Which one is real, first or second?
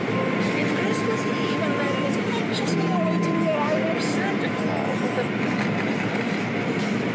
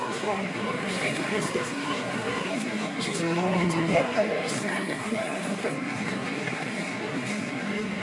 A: first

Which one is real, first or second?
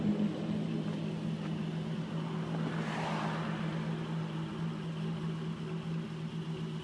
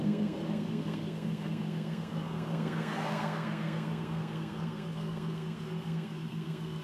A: first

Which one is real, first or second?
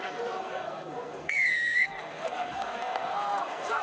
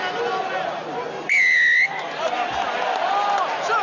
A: second